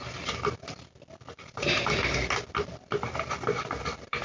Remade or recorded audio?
remade